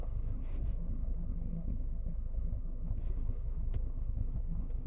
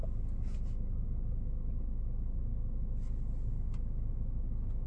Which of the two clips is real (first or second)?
second